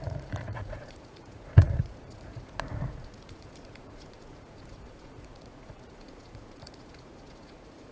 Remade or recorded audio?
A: remade